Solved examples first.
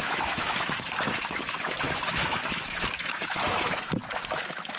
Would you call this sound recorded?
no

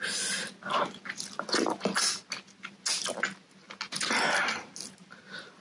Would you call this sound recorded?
yes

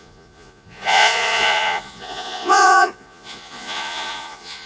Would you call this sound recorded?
no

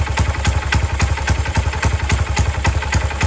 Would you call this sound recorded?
yes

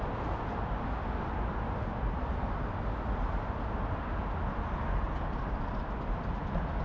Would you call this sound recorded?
yes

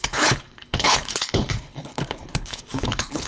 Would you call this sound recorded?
no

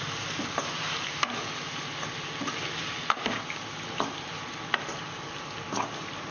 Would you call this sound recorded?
yes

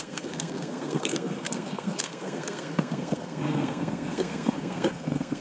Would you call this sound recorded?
no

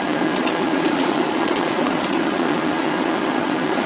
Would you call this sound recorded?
no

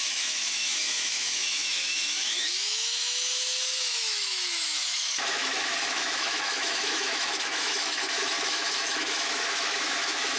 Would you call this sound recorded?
no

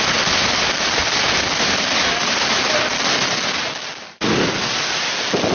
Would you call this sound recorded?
yes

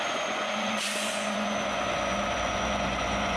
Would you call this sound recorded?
no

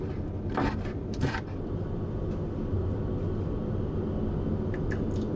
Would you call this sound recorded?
yes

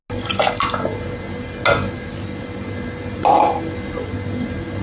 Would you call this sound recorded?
yes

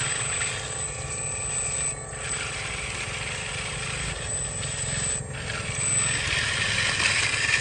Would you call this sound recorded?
yes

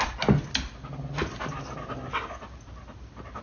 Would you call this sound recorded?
yes